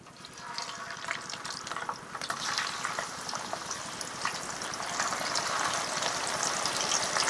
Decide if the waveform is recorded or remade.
recorded